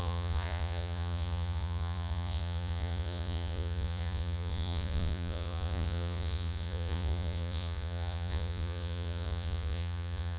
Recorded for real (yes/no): no